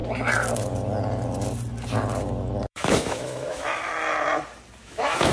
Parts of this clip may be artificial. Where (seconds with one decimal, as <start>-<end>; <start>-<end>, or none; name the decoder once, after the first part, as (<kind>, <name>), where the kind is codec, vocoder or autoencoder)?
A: 2.7-3.9 (autoencoder, DAC-VAE); 4.8-5.3